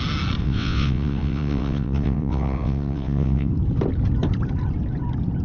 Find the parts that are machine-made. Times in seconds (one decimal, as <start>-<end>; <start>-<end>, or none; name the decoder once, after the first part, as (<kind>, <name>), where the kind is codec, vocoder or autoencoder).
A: 0.4-3.5 (vocoder, WaveNeXt)